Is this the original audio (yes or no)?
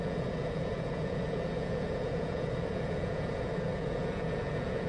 no